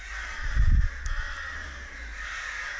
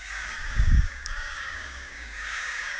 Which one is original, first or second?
first